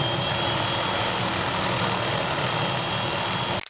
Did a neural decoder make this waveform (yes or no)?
no